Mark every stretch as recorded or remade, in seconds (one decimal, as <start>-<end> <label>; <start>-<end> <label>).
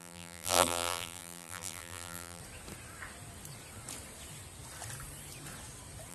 0.0-2.4 remade; 2.4-6.1 recorded